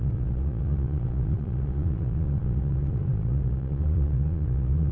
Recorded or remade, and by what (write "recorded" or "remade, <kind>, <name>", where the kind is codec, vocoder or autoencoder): remade, vocoder, Vocos